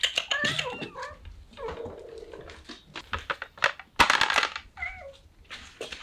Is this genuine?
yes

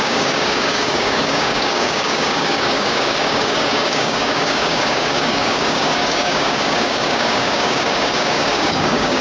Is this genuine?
no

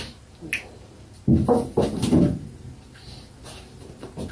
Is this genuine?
yes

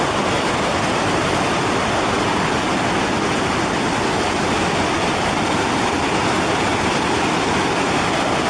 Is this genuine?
no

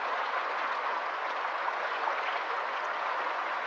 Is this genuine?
no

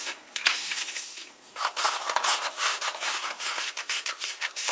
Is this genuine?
no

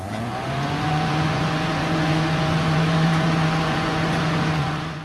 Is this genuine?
no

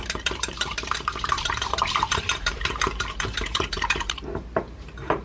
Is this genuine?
no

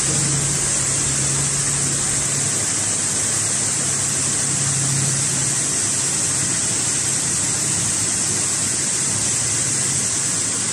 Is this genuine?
yes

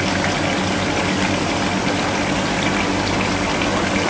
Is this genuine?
yes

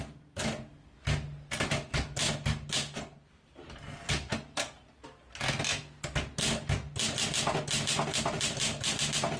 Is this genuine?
yes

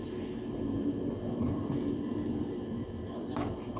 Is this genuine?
yes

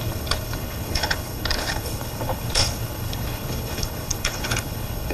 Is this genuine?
no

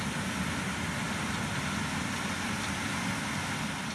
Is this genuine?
yes